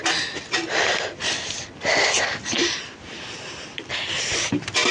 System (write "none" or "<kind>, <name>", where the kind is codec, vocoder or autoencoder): none